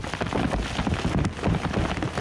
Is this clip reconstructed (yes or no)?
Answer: no